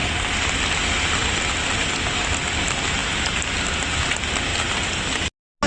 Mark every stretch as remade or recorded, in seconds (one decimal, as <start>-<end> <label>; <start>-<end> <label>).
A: 0.0-4.5 recorded; 4.5-5.3 remade; 5.3-5.7 recorded